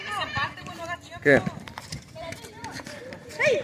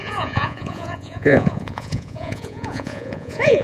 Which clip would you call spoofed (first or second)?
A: second